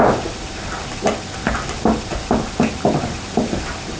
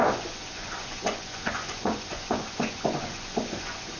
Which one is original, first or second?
first